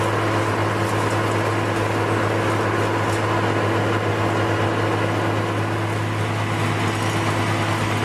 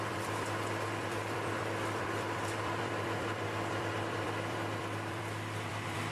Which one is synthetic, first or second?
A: second